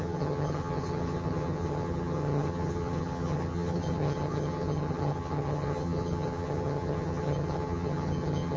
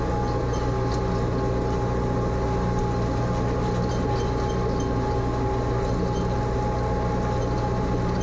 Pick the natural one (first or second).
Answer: second